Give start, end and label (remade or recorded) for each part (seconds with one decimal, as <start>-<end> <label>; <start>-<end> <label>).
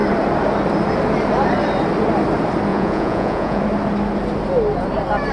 0.0-2.7 recorded; 2.7-3.6 remade; 3.6-5.3 recorded